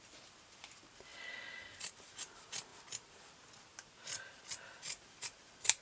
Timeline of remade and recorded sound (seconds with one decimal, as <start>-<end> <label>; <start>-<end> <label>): 0.0-5.8 recorded